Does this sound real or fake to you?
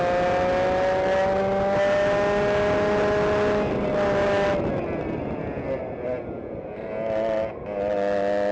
real